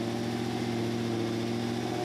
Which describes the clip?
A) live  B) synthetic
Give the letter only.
A